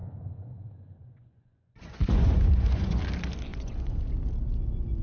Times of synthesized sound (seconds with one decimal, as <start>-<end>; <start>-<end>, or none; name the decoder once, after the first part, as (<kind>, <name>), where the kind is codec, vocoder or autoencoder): 0.0-3.0 (vocoder, Vocos); 3.5-4.0